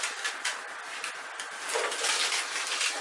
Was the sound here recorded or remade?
recorded